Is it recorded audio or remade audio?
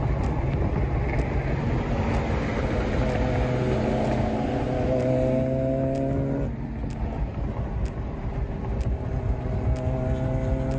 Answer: recorded